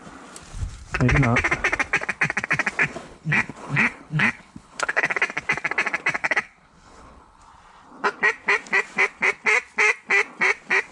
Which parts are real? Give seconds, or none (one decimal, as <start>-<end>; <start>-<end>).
0.0-2.8; 5.2-6.2; 7.4-10.9